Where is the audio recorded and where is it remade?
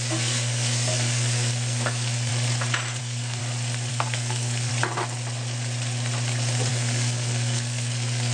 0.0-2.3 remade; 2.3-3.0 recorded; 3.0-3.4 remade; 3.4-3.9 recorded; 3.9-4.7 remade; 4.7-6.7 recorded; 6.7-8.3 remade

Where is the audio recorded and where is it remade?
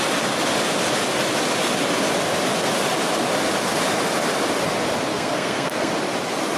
0.0-5.1 recorded; 5.1-5.9 remade; 5.9-6.6 recorded